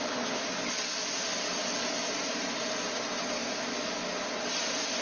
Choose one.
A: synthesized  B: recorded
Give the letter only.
B